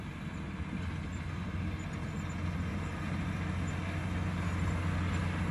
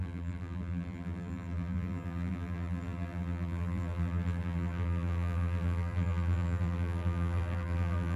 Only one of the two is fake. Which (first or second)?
second